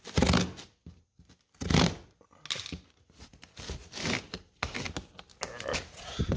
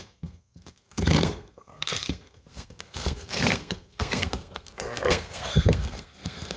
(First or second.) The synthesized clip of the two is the second